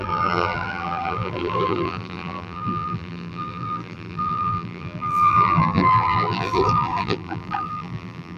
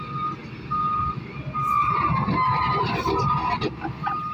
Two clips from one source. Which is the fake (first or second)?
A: first